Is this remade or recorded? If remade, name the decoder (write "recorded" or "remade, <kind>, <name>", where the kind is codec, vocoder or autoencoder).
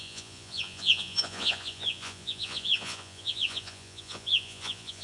remade, vocoder, Vocos